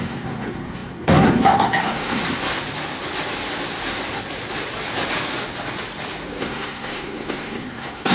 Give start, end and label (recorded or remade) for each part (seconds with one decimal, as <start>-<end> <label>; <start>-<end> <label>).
0.0-2.2 remade; 2.2-6.4 recorded; 6.4-8.1 remade